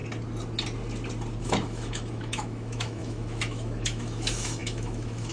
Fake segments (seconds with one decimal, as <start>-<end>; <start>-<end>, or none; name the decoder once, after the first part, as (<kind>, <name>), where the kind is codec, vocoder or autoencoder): 1.4-5.3 (autoencoder, DAC-VAE)